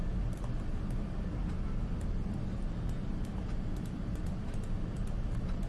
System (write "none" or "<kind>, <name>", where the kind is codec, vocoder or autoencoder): none